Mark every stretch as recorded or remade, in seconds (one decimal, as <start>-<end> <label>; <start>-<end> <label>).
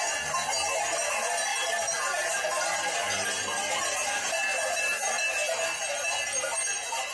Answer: 0.0-1.5 recorded; 1.5-2.3 remade; 2.3-4.5 recorded; 4.5-5.2 remade; 5.2-7.1 recorded